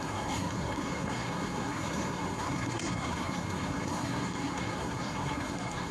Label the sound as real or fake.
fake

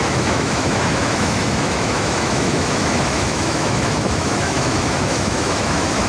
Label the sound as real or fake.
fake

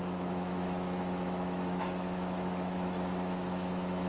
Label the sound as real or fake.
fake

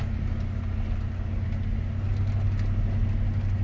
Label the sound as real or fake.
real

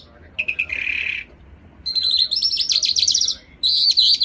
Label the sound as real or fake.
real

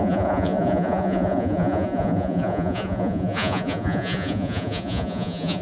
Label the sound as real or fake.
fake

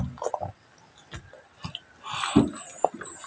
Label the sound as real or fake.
real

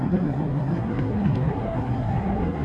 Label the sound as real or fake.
fake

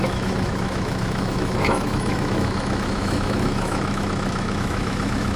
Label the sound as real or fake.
fake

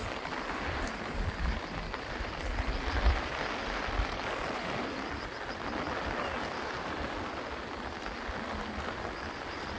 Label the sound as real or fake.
real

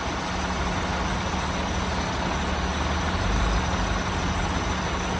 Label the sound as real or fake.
real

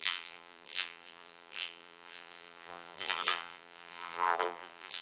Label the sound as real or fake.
fake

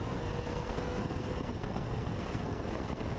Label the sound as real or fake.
fake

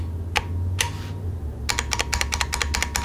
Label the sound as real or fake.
real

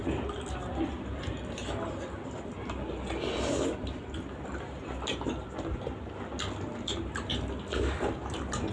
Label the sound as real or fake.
real